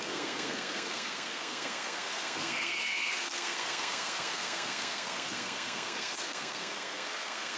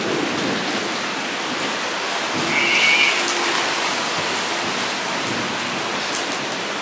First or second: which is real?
second